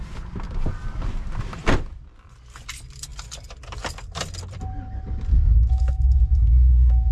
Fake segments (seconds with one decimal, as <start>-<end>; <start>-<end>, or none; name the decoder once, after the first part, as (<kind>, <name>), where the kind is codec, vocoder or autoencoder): 5.3-7.1 (autoencoder, DAC-VAE)